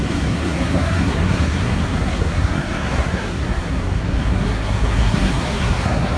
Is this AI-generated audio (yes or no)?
yes